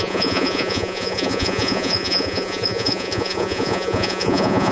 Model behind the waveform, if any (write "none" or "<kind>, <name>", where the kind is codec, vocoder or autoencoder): vocoder, Vocos